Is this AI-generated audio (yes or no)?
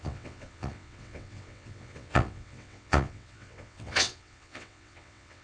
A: yes